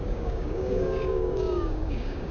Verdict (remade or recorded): remade